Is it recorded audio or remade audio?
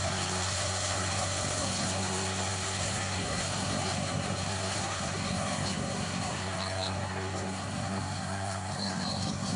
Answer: remade